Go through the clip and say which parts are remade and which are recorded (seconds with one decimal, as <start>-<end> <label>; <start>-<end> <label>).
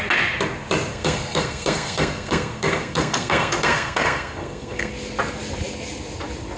0.0-0.9 recorded; 0.9-4.9 remade; 4.9-6.6 recorded